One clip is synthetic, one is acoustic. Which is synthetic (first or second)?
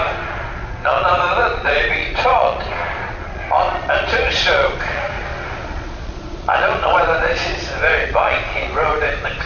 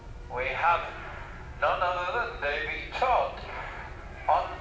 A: first